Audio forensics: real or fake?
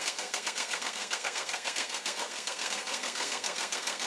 fake